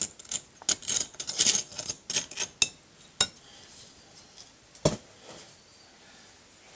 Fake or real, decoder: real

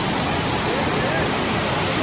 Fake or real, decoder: real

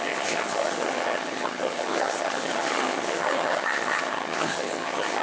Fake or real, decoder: fake, vocoder, HiFi-GAN